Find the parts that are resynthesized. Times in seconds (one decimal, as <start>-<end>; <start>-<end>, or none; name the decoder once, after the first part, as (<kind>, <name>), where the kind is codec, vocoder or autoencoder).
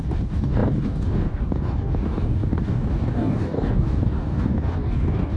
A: 0.0-5.4 (codec, DAC)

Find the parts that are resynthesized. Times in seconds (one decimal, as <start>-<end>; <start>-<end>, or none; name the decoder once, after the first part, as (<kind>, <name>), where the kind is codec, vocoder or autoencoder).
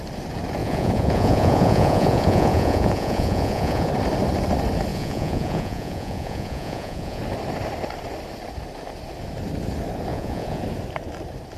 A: 0.6-3.9 (vocoder, Vocos); 4.9-7.2; 10.1-10.6